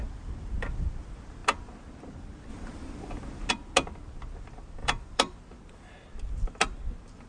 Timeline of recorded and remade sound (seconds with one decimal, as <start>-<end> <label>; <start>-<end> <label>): 0.0-2.5 recorded; 2.5-3.5 remade; 3.5-4.8 recorded; 4.8-5.4 remade; 5.4-7.3 recorded